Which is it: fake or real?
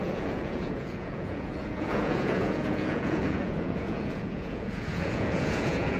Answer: fake